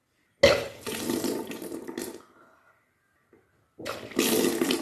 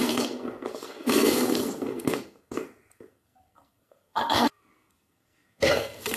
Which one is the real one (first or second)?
first